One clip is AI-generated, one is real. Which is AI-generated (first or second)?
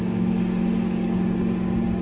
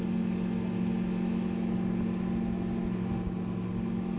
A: first